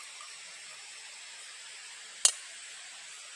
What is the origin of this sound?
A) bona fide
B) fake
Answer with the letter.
A